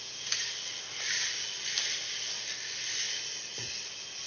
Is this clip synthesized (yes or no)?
no